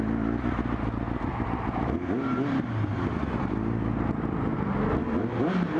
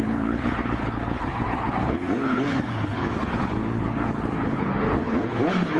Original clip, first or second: first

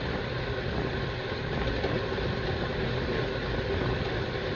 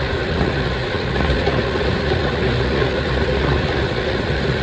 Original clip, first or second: first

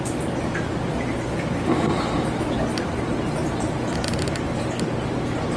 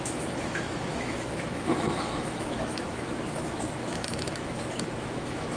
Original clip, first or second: first